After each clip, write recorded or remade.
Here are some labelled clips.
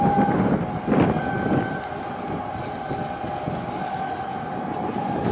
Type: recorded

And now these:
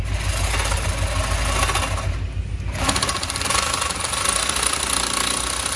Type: recorded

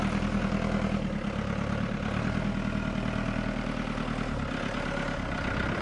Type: recorded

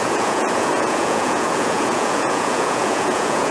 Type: remade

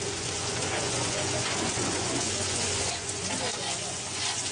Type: remade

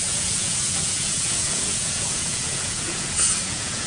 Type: remade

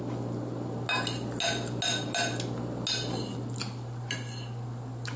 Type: recorded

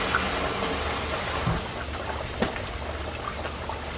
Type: recorded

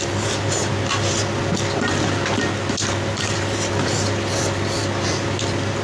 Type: recorded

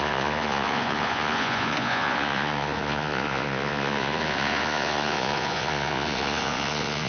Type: remade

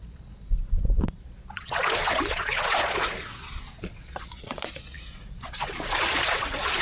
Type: remade